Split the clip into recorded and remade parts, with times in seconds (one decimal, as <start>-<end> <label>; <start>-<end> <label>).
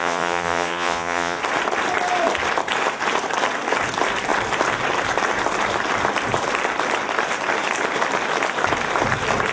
0.0-1.4 remade; 1.4-9.5 recorded